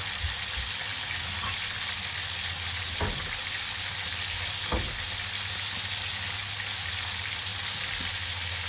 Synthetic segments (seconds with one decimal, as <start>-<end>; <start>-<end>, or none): none